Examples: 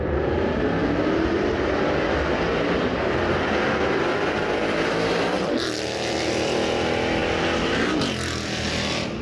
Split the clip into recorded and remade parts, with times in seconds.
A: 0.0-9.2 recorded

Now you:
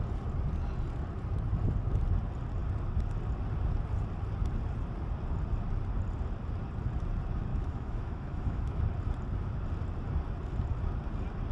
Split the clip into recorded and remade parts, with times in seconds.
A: 0.0-7.5 recorded; 7.5-8.8 remade; 8.8-11.5 recorded

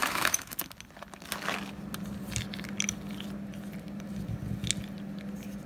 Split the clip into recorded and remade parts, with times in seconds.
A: 0.0-0.6 remade; 0.6-5.7 recorded

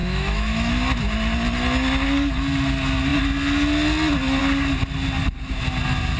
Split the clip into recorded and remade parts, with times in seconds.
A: 0.0-0.7 remade; 0.7-6.2 recorded

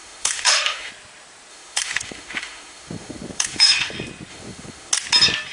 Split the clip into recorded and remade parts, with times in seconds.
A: 0.0-0.9 remade; 0.9-1.5 recorded; 1.5-3.9 remade; 3.9-4.3 recorded; 4.3-4.9 remade; 4.9-5.5 recorded